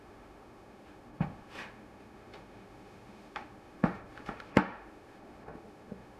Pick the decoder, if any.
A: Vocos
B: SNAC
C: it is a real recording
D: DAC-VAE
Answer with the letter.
D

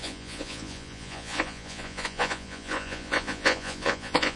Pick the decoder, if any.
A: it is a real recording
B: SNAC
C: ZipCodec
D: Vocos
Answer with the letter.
D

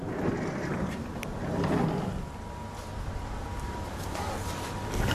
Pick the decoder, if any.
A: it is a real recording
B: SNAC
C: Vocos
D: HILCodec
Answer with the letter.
A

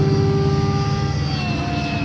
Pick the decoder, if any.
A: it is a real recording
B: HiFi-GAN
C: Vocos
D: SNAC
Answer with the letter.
A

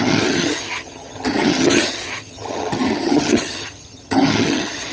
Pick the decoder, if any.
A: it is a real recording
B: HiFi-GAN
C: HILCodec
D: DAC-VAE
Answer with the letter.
B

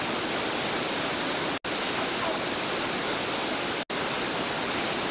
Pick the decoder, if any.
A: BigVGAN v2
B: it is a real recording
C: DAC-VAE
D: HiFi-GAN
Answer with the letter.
B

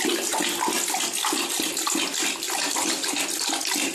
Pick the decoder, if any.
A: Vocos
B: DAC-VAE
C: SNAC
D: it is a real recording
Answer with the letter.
D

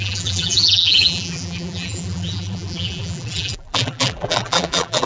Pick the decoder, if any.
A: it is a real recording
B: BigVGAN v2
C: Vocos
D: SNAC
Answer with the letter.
B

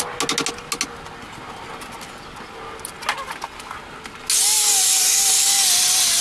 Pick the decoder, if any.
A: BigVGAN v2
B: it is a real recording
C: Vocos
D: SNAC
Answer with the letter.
B